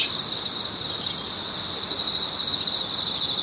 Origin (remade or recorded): recorded